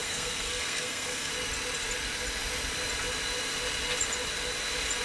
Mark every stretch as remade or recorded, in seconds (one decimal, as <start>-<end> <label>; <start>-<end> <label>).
0.0-1.3 remade; 1.3-5.0 recorded

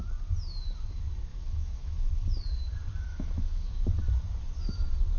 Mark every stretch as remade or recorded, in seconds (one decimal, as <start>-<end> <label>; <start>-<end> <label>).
0.0-1.3 recorded; 1.3-2.1 remade; 2.1-3.1 recorded; 3.1-3.8 remade; 3.8-5.2 recorded

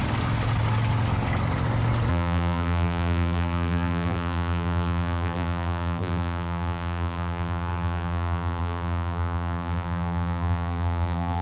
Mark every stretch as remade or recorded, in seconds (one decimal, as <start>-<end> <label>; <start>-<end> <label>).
0.0-2.1 recorded; 2.1-11.4 remade

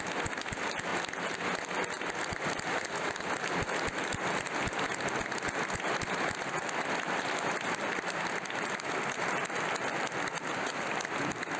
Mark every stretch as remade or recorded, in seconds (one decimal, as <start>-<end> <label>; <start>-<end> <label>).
0.0-11.6 recorded

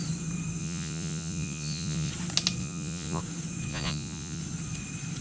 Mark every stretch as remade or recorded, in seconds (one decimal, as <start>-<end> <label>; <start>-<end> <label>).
0.0-0.6 recorded; 0.6-2.1 remade; 2.1-2.6 recorded; 2.6-3.2 remade; 3.2-3.7 recorded; 3.7-4.4 remade; 4.4-5.2 recorded

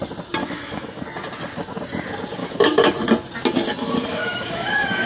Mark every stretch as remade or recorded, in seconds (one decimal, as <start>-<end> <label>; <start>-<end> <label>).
0.0-0.4 recorded; 0.4-1.0 remade; 1.0-2.4 recorded; 2.4-2.9 remade; 2.9-4.1 recorded; 4.1-5.1 remade